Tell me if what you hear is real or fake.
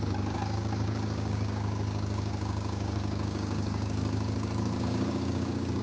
fake